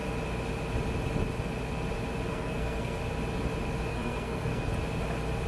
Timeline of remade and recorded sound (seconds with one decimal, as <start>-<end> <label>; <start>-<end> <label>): 0.0-2.3 recorded; 2.3-3.0 remade; 3.0-3.9 recorded; 3.9-4.7 remade; 4.7-5.5 recorded